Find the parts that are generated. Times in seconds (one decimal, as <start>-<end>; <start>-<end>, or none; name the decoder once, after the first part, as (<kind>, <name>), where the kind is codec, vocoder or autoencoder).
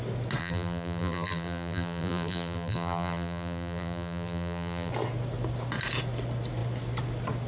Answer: 0.4-4.9 (vocoder, BigVGAN v2)